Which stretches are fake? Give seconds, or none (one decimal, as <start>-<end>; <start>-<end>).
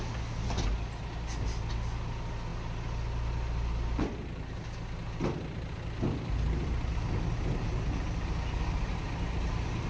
none